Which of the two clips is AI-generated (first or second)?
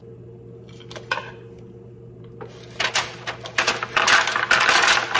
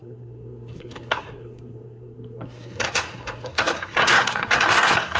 second